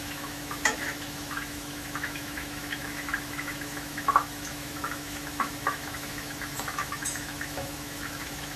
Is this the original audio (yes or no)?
no